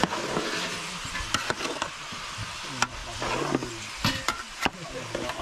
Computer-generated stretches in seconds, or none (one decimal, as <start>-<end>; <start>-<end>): none